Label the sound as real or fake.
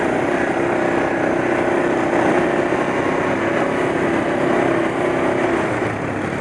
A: real